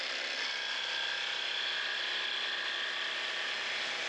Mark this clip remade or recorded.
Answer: recorded